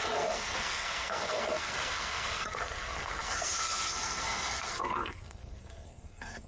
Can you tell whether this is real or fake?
fake